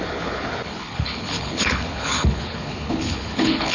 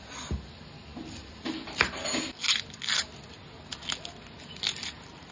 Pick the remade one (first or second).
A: first